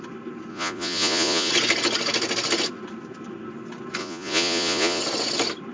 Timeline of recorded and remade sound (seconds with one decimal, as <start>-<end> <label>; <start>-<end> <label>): 0.0-0.5 recorded; 0.5-1.5 remade; 1.5-4.0 recorded; 4.0-5.0 remade; 5.0-5.7 recorded

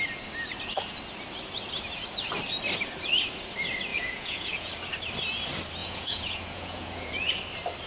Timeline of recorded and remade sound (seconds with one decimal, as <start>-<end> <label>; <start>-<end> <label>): 0.0-3.9 recorded; 3.9-4.7 remade; 4.7-5.8 recorded; 5.8-7.3 remade; 7.3-7.9 recorded

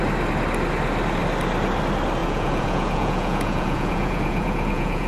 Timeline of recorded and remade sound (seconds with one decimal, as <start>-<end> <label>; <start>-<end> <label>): 0.0-2.2 recorded; 2.2-5.1 remade

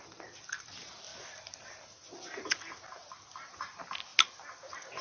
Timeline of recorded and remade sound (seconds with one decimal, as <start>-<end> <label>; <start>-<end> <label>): 0.0-5.0 recorded

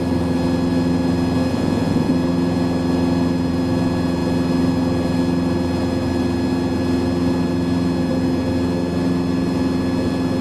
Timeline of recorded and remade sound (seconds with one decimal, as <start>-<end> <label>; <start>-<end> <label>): 0.0-1.5 recorded; 1.5-2.1 remade; 2.1-10.4 recorded